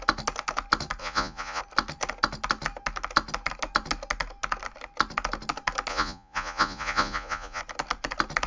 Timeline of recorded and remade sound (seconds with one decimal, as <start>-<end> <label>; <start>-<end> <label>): 0.0-1.0 recorded; 1.0-1.6 remade; 1.6-5.9 recorded; 5.9-7.6 remade; 7.6-8.5 recorded